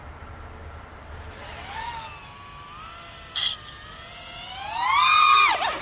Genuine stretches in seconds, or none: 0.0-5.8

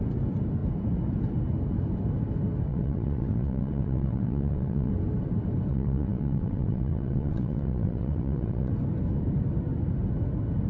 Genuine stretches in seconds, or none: 0.0-2.7; 4.9-5.7; 8.7-10.7